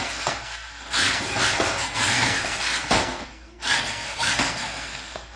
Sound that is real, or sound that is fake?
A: fake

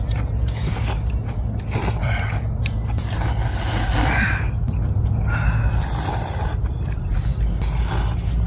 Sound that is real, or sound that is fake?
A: real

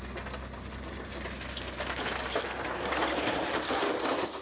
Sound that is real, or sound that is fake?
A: real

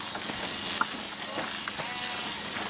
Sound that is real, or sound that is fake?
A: real